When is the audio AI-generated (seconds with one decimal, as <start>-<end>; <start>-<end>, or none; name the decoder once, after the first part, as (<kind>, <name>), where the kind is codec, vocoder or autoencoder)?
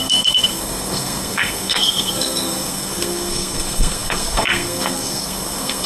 0.0-5.9 (codec, SNAC)